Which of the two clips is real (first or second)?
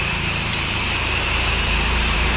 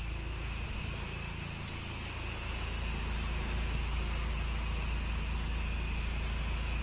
second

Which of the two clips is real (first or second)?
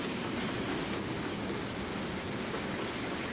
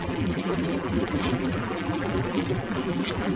first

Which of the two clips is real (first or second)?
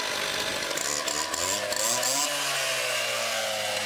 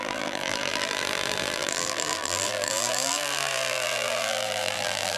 first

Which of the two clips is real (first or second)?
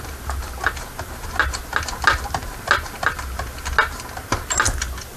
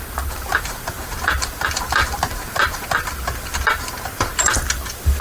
first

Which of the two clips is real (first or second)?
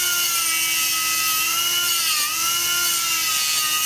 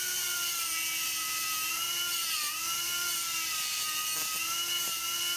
first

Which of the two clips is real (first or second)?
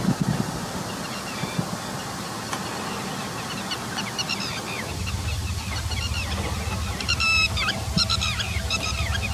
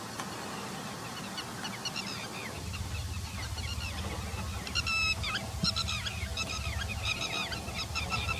second